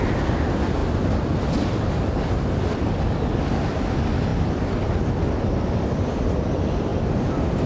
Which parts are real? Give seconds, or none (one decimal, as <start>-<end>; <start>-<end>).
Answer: 0.0-7.7